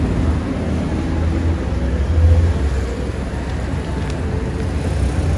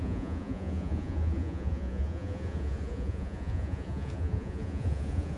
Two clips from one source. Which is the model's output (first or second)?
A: second